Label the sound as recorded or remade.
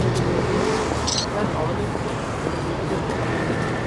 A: recorded